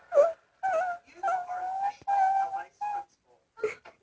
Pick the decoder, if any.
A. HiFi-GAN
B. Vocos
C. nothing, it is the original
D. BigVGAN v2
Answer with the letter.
C